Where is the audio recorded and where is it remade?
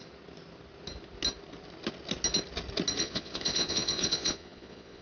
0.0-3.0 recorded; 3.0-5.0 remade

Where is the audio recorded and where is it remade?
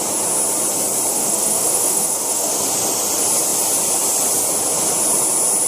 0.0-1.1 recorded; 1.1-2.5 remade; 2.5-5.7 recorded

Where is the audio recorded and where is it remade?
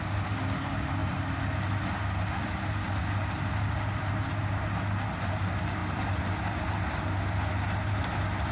0.0-8.5 recorded